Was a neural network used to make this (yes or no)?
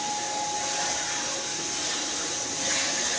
no